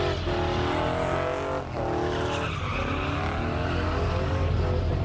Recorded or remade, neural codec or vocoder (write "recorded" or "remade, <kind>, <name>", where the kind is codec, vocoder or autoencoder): recorded